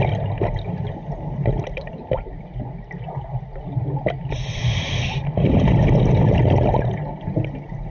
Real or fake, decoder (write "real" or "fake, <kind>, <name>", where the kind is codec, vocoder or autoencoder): real